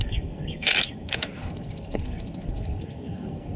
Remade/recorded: remade